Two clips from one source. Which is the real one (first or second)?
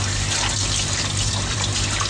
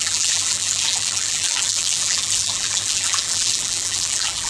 first